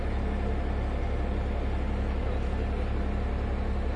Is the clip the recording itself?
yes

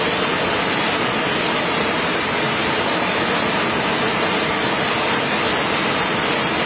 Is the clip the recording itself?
yes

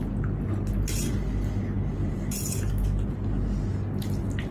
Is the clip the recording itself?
yes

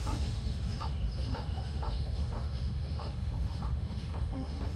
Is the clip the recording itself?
no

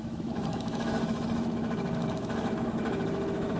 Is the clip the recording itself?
no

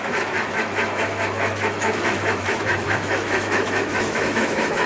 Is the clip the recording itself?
no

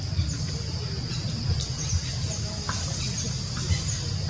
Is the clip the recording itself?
yes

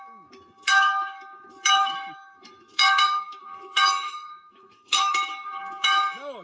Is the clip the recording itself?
no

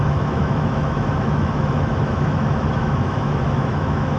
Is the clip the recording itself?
no